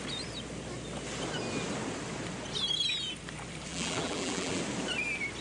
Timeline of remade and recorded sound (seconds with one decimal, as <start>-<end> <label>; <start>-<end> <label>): 0.0-3.7 recorded; 3.7-4.6 remade; 4.6-5.4 recorded